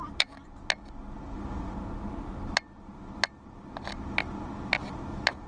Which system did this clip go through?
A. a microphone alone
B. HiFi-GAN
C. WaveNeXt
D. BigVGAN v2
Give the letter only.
A